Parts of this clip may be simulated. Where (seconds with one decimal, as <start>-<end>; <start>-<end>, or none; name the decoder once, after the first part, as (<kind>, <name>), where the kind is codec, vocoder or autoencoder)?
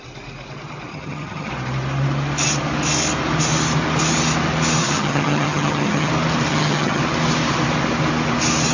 0.9-1.5 (vocoder, HiFi-GAN); 4.8-6.1; 6.5-7.0